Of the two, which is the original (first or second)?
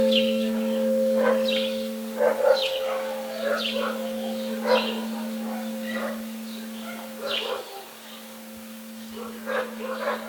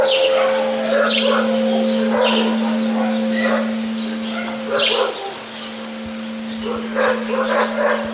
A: second